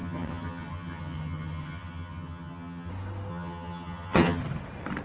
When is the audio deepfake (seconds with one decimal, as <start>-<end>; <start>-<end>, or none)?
0.0-2.9; 3.3-4.4